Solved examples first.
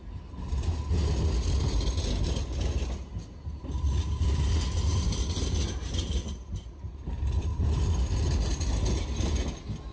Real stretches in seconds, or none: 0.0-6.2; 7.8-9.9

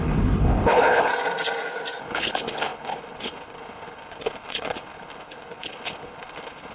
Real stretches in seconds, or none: 1.1-2.0